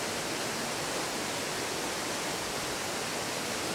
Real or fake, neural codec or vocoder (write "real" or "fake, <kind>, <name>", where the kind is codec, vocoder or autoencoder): real